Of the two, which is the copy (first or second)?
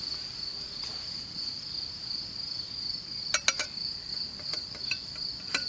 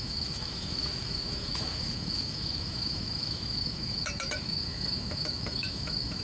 second